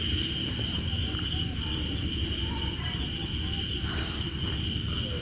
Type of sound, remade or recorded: recorded